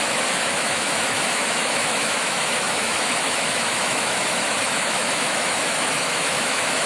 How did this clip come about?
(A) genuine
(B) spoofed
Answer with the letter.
B